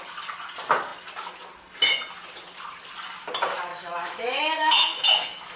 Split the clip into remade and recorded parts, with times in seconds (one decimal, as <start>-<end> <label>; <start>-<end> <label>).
0.0-3.7 recorded; 3.7-5.6 remade

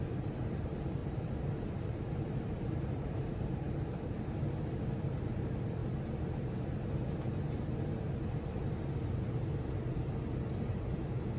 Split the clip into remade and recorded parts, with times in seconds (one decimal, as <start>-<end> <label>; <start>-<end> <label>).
0.0-1.0 recorded; 1.0-4.2 remade; 4.2-11.4 recorded